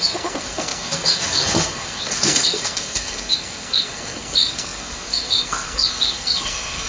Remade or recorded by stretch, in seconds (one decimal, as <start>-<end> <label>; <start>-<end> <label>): 0.0-6.9 remade